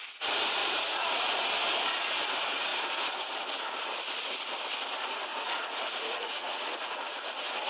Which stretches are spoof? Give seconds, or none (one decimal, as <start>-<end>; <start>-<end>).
0.6-1.3; 5.3-7.3